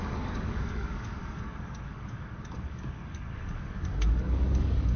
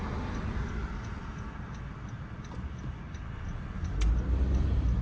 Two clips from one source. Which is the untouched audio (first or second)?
second